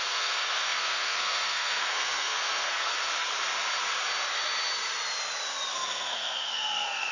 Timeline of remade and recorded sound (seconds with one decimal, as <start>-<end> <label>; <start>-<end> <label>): 0.0-2.9 remade; 2.9-5.7 recorded; 5.7-7.1 remade